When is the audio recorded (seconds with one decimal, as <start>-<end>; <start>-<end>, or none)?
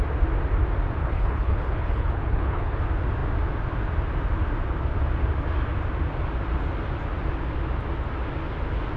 0.0-1.0; 2.8-9.0